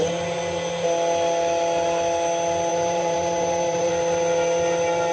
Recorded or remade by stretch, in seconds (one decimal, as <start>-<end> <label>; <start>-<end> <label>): 0.0-2.7 recorded; 2.7-3.9 remade; 3.9-5.1 recorded